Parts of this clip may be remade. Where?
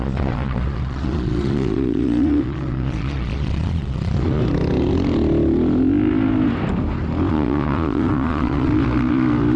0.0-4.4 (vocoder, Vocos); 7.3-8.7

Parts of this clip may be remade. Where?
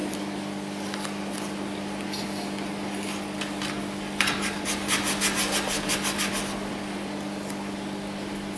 none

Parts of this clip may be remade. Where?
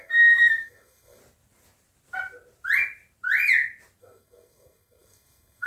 0.0-1.2 (codec, SNAC); 4.0-5.7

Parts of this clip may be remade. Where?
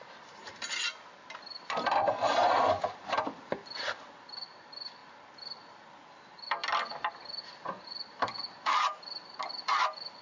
none